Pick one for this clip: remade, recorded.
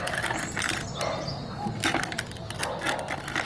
recorded